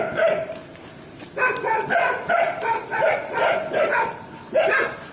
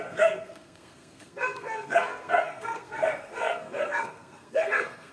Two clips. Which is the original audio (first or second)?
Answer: first